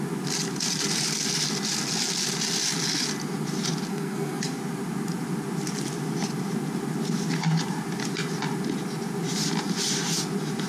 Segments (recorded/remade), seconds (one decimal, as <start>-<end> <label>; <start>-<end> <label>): 0.0-3.9 recorded; 3.9-4.4 remade; 4.4-10.7 recorded